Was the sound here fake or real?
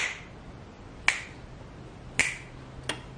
real